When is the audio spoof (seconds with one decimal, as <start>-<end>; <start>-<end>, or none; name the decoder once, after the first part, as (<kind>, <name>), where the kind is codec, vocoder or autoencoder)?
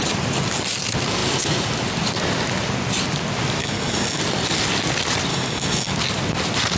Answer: 3.6-4.2 (codec, DAC); 5.3-5.9